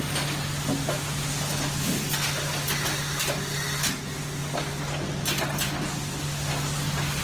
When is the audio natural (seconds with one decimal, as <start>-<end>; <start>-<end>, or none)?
0.0-7.2